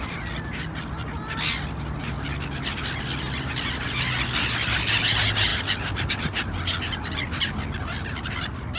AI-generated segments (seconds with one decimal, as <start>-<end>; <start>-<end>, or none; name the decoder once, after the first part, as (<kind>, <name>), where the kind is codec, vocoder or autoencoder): none